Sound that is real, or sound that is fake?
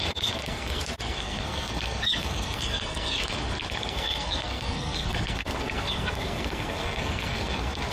fake